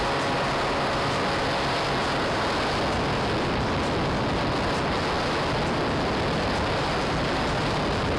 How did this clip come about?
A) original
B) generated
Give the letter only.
A